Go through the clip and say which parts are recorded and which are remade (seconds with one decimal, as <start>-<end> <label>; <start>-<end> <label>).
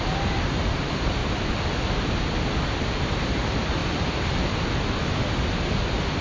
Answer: 0.0-1.2 remade; 1.2-3.0 recorded; 3.0-3.8 remade; 3.8-6.2 recorded